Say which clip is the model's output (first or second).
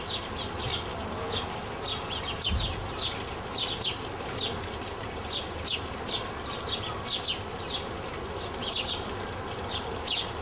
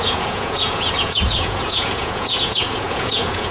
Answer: second